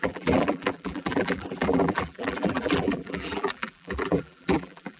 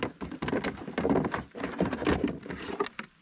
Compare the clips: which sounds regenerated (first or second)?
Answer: first